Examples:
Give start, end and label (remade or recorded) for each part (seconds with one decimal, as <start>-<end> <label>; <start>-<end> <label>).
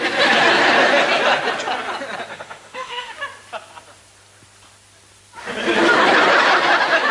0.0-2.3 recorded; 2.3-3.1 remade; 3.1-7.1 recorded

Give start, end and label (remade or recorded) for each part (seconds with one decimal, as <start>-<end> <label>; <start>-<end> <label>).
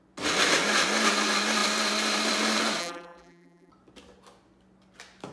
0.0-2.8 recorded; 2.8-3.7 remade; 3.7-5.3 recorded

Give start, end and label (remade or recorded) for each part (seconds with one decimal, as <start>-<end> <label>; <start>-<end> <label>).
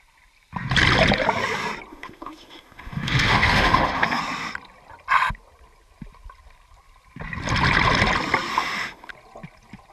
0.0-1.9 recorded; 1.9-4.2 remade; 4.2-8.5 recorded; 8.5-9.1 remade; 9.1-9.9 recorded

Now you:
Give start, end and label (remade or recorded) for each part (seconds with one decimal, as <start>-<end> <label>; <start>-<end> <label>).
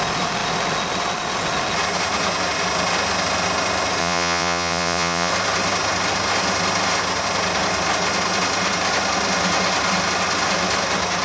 0.0-4.0 recorded; 4.0-5.3 remade; 5.3-11.2 recorded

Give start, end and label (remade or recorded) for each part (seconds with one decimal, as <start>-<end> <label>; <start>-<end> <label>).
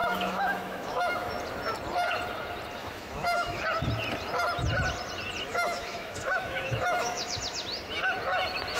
0.0-1.3 remade; 1.3-2.8 recorded; 2.8-3.6 remade; 3.6-5.5 recorded; 5.5-7.4 remade; 7.4-8.8 recorded